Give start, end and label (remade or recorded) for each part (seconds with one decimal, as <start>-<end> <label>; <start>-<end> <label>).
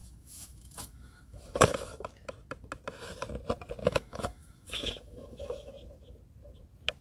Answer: 0.0-2.1 remade; 2.1-3.8 recorded; 3.8-5.7 remade; 5.7-7.0 recorded